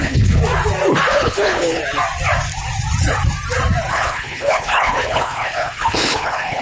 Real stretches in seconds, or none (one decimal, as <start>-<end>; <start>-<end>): 0.4-1.1; 1.8-3.9